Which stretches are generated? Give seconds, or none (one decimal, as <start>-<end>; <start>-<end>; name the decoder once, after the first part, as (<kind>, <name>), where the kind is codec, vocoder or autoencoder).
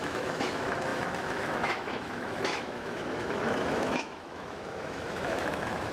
0.0-5.9 (autoencoder, DAC-VAE)